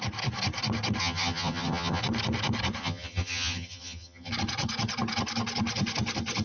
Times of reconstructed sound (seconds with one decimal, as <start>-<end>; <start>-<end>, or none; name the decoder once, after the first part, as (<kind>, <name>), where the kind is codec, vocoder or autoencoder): 1.0-2.0 (vocoder, HiFi-GAN); 2.8-4.3